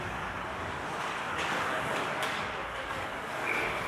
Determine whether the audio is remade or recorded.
remade